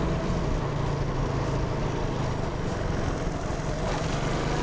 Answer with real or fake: real